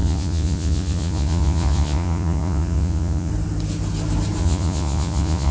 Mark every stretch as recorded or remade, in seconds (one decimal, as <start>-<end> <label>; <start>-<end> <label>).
0.0-3.3 remade; 3.3-4.4 recorded; 4.4-5.5 remade